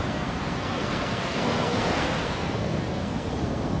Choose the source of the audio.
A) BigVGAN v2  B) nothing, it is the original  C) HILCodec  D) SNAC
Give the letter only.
D